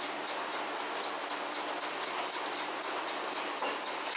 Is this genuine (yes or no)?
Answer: yes